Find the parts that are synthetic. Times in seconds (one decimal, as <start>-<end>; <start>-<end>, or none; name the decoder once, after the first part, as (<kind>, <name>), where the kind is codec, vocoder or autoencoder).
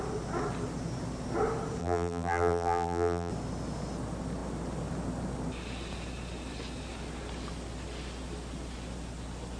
1.8-3.3 (vocoder, BigVGAN v2)